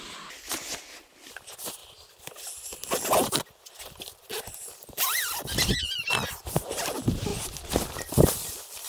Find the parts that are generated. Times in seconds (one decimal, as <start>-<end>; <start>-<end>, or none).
1.8-3.1; 7.3-8.1